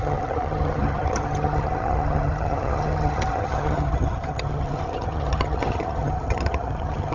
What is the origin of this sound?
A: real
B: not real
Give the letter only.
B